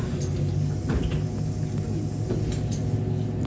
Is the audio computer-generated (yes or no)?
no